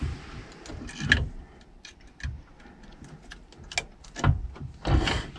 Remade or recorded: recorded